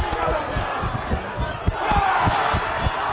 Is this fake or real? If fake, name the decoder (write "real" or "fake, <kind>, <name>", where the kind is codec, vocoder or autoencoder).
real